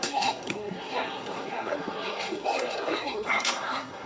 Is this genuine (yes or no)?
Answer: no